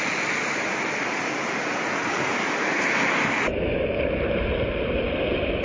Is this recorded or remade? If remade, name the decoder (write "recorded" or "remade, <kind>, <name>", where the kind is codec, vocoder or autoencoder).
recorded